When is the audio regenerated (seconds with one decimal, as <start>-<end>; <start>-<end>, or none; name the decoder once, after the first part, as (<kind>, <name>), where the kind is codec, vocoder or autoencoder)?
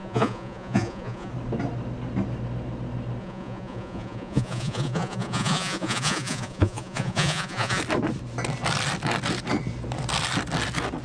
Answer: 0.0-1.3 (vocoder, Vocos); 3.2-7.8